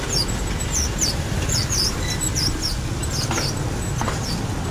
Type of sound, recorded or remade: recorded